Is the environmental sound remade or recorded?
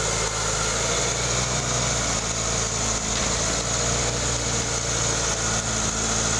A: recorded